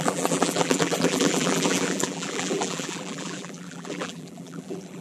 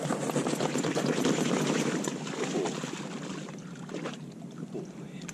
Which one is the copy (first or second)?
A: first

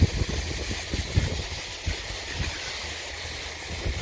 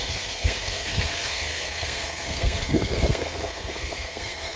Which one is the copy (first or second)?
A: second